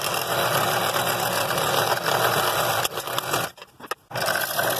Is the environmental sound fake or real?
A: real